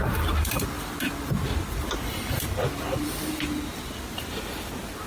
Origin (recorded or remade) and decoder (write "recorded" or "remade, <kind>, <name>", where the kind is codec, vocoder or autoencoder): recorded